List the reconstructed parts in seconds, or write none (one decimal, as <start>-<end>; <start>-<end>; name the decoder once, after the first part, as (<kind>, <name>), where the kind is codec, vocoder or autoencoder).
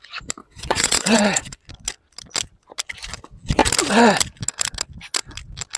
0.4-1.6 (vocoder, WaveNeXt)